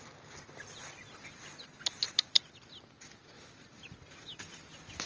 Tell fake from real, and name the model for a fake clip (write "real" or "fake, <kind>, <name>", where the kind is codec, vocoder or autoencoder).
real